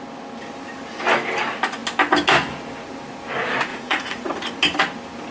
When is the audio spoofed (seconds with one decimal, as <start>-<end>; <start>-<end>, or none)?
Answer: 3.7-4.4